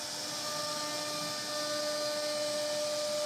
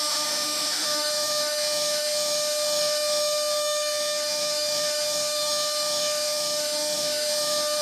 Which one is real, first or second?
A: first